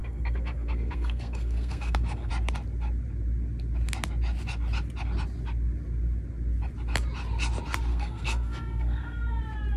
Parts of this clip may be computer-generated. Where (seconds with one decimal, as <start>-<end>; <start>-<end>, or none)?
0.0-2.3; 7.9-9.4